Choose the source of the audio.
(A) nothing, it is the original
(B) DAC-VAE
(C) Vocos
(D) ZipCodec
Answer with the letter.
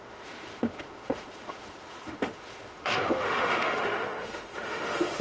B